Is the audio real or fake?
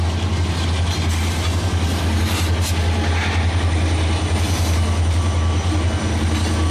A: real